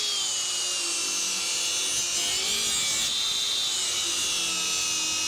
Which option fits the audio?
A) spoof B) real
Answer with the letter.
B